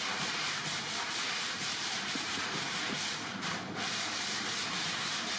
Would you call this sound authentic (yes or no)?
no